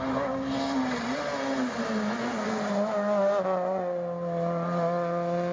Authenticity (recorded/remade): recorded